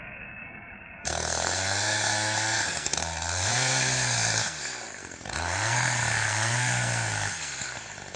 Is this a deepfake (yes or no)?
yes